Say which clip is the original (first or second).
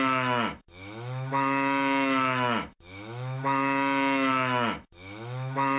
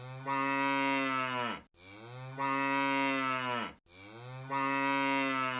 second